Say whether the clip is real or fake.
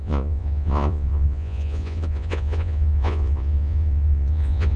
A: fake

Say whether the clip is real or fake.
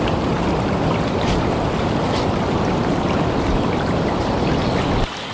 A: real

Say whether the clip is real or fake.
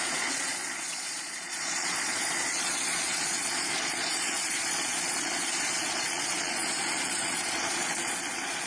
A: fake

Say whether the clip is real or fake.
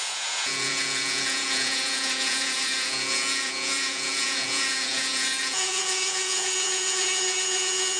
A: fake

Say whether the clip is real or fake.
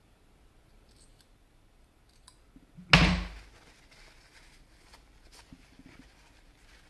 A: real